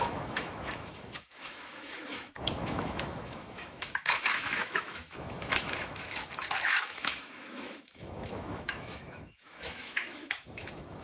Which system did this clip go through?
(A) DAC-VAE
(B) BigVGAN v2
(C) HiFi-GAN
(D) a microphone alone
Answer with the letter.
A